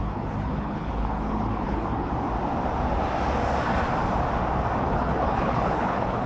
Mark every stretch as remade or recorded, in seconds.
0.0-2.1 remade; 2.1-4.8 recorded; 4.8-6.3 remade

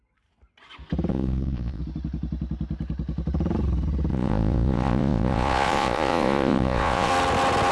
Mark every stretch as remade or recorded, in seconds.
0.0-1.1 recorded; 1.1-1.8 remade; 1.8-4.1 recorded; 4.1-7.1 remade; 7.1-7.7 recorded

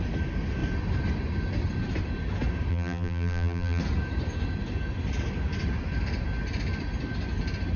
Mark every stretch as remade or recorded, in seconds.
0.0-2.7 recorded; 2.7-3.8 remade; 3.8-7.8 recorded

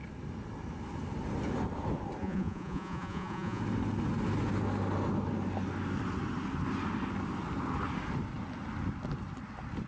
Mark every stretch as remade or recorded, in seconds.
0.0-2.2 recorded; 2.2-3.6 remade; 3.6-9.9 recorded